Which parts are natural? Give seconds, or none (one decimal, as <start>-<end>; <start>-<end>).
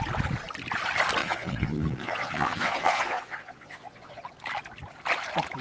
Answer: 0.0-1.2; 4.2-5.6